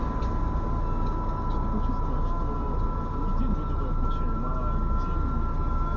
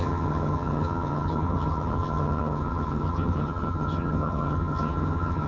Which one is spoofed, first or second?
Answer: second